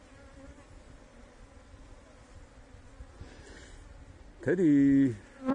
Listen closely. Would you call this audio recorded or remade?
recorded